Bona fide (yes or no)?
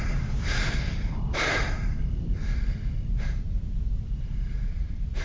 no